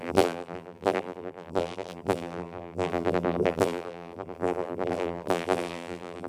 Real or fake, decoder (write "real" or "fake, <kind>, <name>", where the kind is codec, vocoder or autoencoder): fake, vocoder, BigVGAN v2